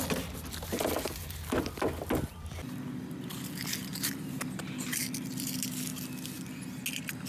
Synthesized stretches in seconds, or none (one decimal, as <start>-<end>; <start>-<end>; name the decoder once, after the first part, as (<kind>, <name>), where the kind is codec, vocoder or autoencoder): 2.3-3.0 (vocoder, BigVGAN v2); 3.9-4.7